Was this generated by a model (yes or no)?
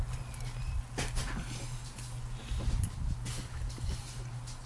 no